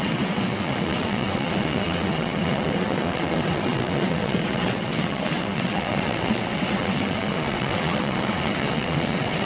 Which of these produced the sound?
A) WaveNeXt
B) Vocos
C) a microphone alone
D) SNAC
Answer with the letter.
A